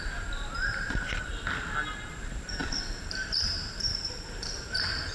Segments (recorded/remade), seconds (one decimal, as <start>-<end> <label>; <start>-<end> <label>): 0.0-1.3 remade; 1.3-2.1 recorded; 2.1-5.1 remade